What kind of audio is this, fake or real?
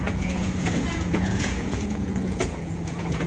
fake